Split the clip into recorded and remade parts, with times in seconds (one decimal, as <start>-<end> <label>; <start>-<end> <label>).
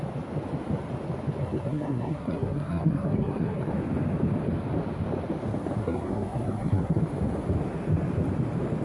0.0-1.4 recorded; 1.4-3.7 remade; 3.7-5.8 recorded; 5.8-7.0 remade; 7.0-8.8 recorded